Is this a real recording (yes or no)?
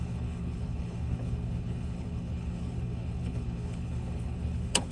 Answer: no